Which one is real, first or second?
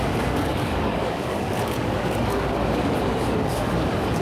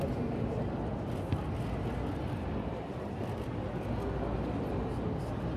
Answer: second